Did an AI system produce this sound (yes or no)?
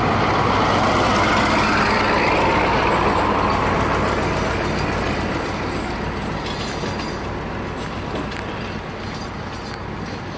no